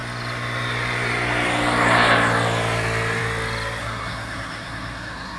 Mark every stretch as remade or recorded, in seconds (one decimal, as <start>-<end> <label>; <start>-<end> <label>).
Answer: 0.0-3.8 recorded; 3.8-5.4 remade